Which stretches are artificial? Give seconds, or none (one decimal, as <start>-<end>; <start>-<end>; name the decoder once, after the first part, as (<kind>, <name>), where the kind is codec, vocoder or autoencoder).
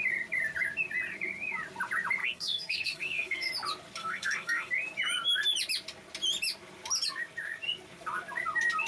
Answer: 2.2-3.5 (codec, SNAC); 4.0-4.7